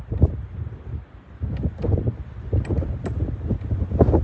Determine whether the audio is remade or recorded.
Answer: recorded